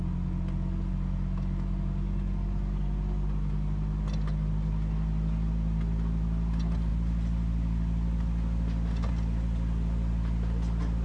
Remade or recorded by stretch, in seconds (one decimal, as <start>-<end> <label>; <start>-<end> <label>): 0.0-11.0 recorded